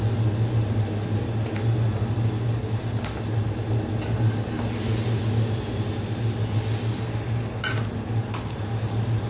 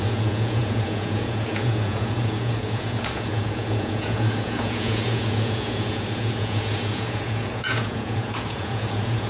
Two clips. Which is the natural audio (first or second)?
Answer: first